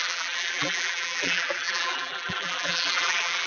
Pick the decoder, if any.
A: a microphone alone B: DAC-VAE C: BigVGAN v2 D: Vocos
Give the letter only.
C